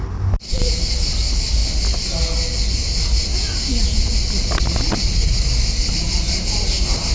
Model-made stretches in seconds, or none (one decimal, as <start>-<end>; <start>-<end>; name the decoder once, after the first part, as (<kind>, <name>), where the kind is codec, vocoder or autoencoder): 0.0-1.6 (vocoder, BigVGAN v2); 5.9-7.1